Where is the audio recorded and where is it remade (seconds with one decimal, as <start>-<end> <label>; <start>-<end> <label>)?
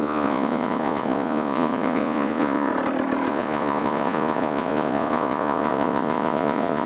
0.0-2.7 remade; 2.7-3.3 recorded; 3.3-6.9 remade